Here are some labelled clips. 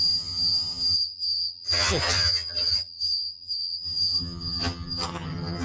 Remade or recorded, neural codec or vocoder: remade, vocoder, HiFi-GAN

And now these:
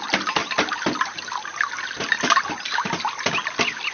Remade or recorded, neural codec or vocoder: recorded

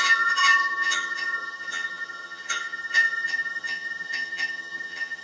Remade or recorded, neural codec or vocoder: remade, vocoder, HiFi-GAN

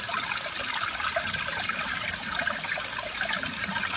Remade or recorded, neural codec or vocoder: recorded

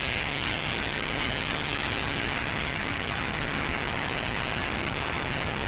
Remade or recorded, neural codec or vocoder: remade, vocoder, HiFi-GAN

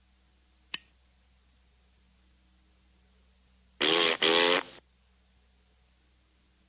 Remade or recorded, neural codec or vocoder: recorded